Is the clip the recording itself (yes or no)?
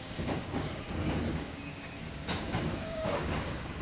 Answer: no